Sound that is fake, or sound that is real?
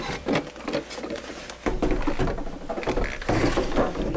real